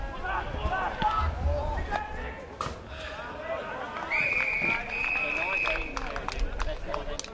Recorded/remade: recorded